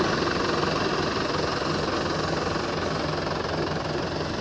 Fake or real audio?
real